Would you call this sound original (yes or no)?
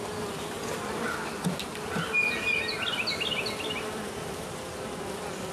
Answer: yes